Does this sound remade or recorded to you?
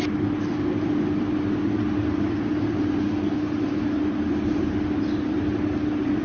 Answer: recorded